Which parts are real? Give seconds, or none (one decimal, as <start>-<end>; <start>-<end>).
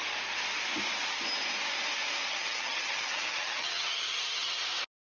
0.0-2.3; 4.6-5.0